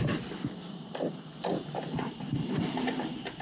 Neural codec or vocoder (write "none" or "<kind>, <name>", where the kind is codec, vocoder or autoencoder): none